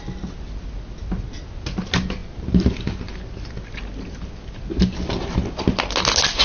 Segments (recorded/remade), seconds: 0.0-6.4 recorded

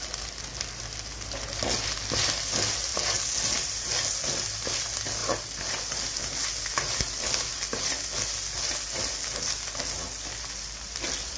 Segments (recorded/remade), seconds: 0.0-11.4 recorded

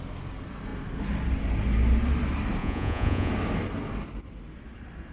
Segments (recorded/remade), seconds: 0.0-2.6 recorded; 2.6-3.3 remade; 3.3-5.1 recorded